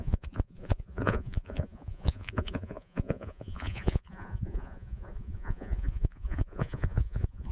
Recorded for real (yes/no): no